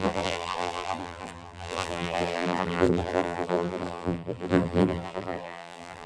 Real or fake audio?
fake